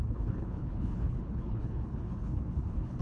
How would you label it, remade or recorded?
remade